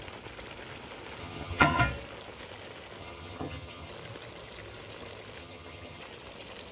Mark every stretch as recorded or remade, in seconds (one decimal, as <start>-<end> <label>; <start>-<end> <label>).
0.0-1.2 recorded; 1.2-1.8 remade; 1.8-3.0 recorded; 3.0-3.9 remade; 3.9-5.4 recorded; 5.4-6.0 remade; 6.0-6.7 recorded